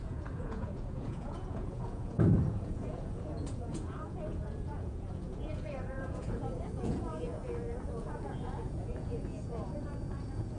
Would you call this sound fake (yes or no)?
yes